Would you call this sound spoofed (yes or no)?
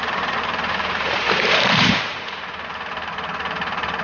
yes